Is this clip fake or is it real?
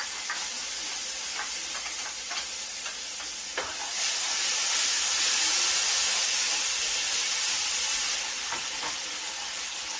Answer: real